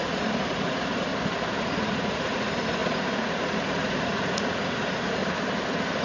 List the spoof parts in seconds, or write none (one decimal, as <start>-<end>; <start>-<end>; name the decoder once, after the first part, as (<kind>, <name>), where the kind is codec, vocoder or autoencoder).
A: 0.0-1.1 (vocoder, Vocos); 1.6-5.2